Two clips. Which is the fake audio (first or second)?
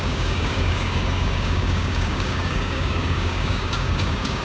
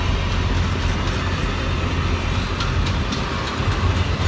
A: first